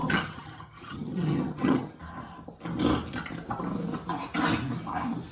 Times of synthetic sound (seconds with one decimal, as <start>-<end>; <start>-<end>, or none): 0.0-2.0